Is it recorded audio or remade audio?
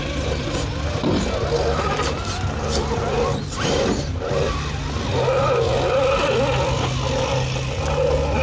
recorded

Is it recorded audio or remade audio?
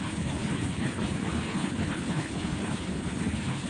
remade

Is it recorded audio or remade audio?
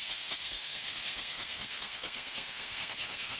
remade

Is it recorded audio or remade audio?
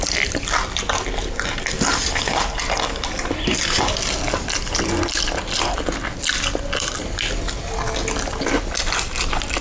recorded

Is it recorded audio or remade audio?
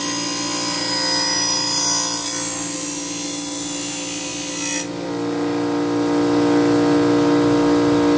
recorded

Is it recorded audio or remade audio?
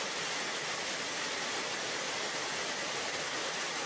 recorded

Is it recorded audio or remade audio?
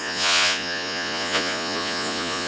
remade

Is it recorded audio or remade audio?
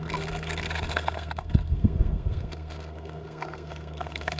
remade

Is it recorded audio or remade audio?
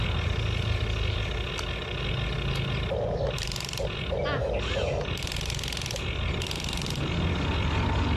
recorded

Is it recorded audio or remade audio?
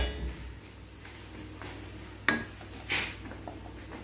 recorded